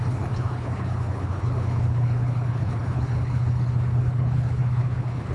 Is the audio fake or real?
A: fake